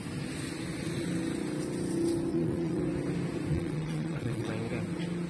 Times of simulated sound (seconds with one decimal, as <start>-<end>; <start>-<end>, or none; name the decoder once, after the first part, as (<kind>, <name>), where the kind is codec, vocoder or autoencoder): 2.3-2.8 (vocoder, Vocos); 3.5-4.5